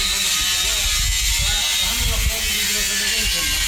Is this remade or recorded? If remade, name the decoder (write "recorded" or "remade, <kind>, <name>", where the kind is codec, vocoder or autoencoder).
recorded